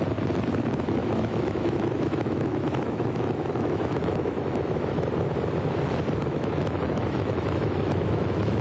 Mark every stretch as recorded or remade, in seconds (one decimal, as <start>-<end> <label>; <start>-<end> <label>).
0.0-1.0 recorded; 1.0-5.1 remade; 5.1-6.2 recorded; 6.2-8.6 remade